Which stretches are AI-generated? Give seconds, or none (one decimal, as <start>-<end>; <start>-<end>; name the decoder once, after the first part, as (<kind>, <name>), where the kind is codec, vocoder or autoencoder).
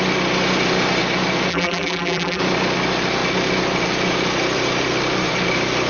1.5-2.4 (vocoder, BigVGAN v2)